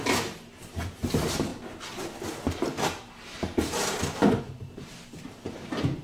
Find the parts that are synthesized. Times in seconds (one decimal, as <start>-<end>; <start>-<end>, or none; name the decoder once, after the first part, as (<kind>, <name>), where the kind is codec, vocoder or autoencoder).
0.0-1.5 (vocoder, BigVGAN v2); 4.4-6.0